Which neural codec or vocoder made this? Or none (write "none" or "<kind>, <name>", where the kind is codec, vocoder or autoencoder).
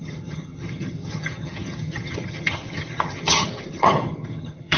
vocoder, HiFi-GAN